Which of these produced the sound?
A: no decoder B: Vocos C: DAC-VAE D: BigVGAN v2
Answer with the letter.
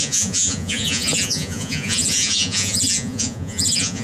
B